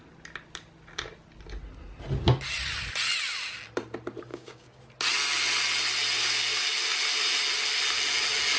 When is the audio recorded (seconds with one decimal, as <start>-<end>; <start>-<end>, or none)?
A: 0.0-4.3; 4.8-8.6